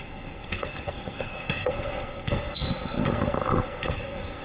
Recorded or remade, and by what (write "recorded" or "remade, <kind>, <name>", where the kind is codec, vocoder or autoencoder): remade, codec, SNAC